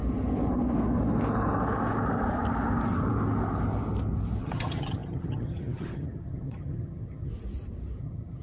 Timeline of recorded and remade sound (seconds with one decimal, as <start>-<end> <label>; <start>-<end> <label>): 0.0-4.4 recorded; 4.4-7.3 remade; 7.3-8.0 recorded; 8.0-8.4 remade